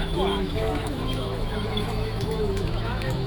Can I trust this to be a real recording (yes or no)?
no